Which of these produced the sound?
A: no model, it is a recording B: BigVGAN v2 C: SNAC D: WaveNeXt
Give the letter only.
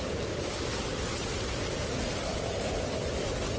A